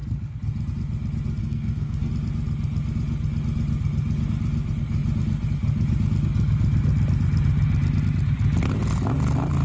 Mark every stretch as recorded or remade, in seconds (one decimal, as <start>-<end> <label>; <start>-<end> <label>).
0.0-1.4 recorded; 1.4-2.1 remade; 2.1-9.6 recorded